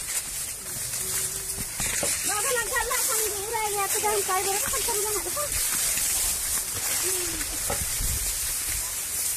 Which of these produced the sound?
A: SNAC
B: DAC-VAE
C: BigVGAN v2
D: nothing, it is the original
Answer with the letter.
D